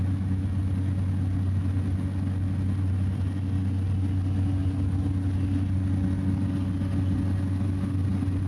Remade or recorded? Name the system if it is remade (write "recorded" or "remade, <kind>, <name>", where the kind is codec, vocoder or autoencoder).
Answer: recorded